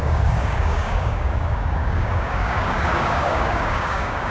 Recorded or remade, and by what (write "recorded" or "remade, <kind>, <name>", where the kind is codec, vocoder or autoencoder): remade, codec, DAC